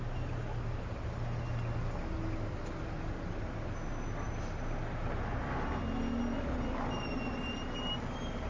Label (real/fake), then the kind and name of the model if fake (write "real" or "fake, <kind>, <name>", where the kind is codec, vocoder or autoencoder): real